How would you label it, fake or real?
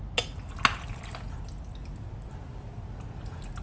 real